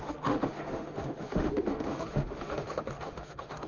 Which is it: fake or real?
fake